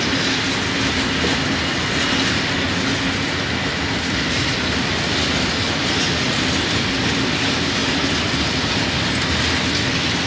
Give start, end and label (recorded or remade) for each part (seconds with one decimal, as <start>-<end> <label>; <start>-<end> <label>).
0.0-10.3 recorded